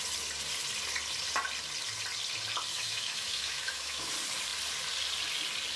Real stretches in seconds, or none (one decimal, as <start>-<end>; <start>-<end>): 0.0-2.7; 4.1-5.8